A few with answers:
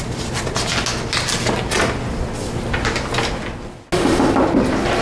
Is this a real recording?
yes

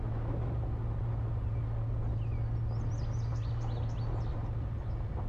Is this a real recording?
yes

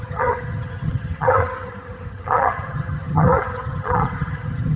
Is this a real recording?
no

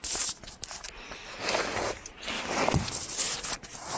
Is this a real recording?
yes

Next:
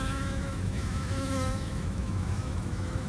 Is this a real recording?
no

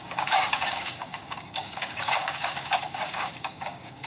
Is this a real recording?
no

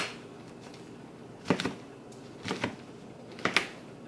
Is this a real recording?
yes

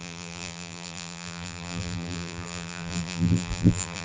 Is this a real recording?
no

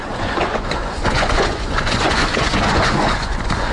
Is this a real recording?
no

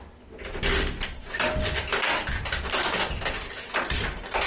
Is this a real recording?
yes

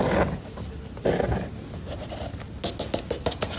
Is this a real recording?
yes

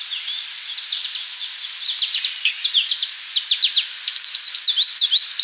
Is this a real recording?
yes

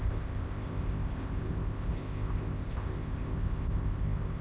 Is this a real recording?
no